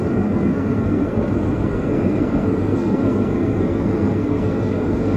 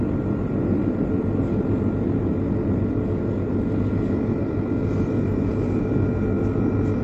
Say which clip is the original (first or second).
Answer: second